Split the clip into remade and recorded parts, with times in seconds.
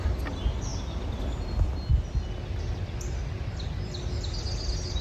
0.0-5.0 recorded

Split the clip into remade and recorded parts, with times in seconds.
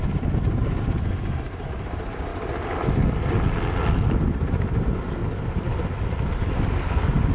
0.0-2.3 remade; 2.3-4.2 recorded; 4.2-5.2 remade; 5.2-6.4 recorded; 6.4-7.3 remade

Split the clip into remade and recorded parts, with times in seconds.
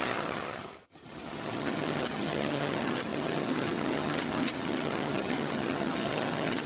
0.0-6.7 remade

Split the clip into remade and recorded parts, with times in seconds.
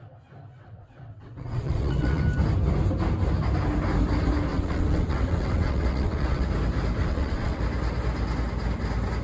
0.0-0.5 recorded; 0.5-2.2 remade; 2.2-4.5 recorded; 4.5-6.5 remade; 6.5-7.0 recorded; 7.0-7.6 remade; 7.6-9.2 recorded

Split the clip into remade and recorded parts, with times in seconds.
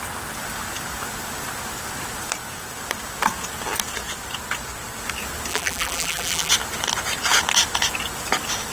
0.0-5.5 recorded; 5.5-6.5 remade; 6.5-8.7 recorded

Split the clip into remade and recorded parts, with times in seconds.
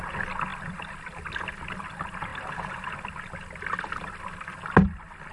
0.0-5.3 recorded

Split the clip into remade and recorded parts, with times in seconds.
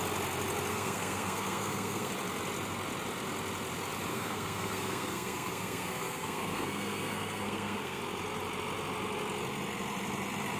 0.0-0.7 recorded; 0.7-2.1 remade; 2.1-4.1 recorded; 4.1-8.0 remade; 8.0-10.6 recorded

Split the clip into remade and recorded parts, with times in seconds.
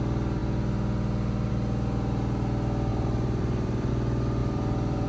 0.0-2.9 recorded; 2.9-3.9 remade; 3.9-4.4 recorded; 4.4-5.1 remade